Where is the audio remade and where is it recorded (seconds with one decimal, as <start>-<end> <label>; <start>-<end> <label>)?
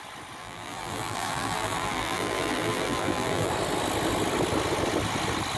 0.0-0.4 recorded; 0.4-3.5 remade; 3.5-5.6 recorded